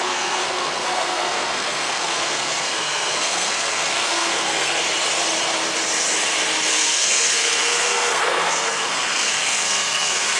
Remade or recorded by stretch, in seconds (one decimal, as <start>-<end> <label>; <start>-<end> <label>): 0.0-4.8 remade; 4.8-6.7 recorded; 6.7-10.4 remade